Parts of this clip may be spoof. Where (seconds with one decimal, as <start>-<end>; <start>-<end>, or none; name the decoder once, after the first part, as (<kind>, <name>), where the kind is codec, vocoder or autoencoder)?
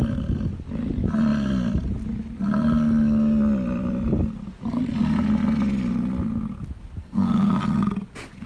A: 7.0-7.5 (codec, SNAC)